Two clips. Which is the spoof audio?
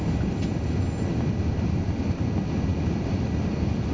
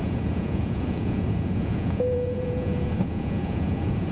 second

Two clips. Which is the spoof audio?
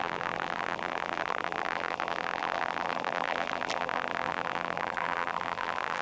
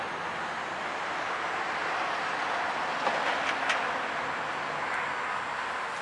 first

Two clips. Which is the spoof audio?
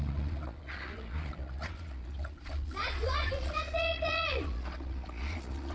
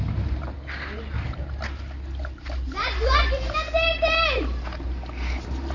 first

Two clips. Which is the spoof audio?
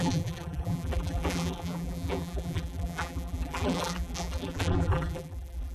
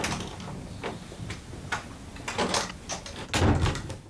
first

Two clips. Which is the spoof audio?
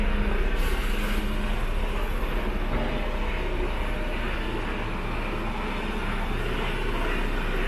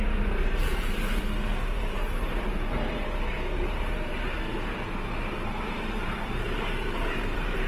second